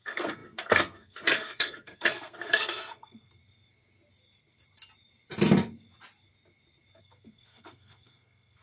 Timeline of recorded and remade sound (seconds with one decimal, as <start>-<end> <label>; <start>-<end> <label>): 0.0-3.4 remade; 3.4-7.0 recorded; 7.0-8.6 remade